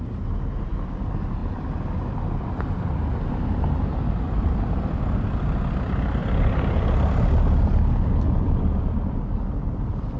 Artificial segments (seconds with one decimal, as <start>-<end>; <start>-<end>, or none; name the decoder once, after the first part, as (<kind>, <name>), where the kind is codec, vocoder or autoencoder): none